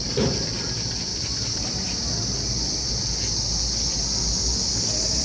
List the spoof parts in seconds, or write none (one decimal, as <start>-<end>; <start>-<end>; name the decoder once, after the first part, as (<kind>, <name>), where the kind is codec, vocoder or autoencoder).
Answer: 1.1-2.1 (vocoder, BigVGAN v2)